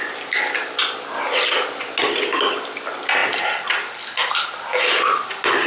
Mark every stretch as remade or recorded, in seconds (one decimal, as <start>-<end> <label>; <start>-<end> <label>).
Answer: 0.0-5.7 recorded